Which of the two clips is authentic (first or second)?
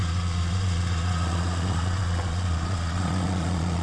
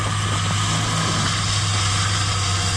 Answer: second